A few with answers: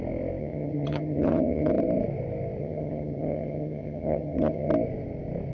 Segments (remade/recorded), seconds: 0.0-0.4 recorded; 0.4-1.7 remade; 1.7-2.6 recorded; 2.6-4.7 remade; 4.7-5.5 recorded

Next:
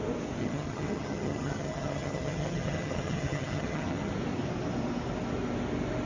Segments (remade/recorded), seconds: 0.0-0.4 recorded; 0.4-4.1 remade; 4.1-6.1 recorded

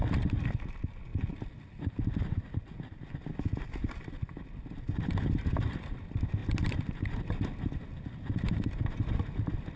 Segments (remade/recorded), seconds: 0.0-9.8 recorded

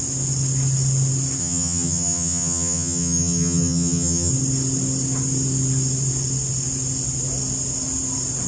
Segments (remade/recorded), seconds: 0.0-1.4 recorded; 1.4-4.3 remade; 4.3-8.5 recorded

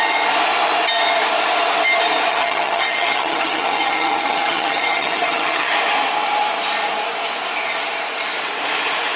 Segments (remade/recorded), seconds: 0.0-2.3 recorded; 2.3-5.7 remade; 5.7-9.2 recorded

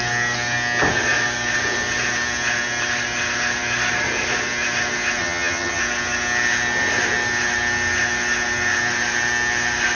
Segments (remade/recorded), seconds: 0.0-5.2 recorded; 5.2-5.8 remade; 5.8-9.9 recorded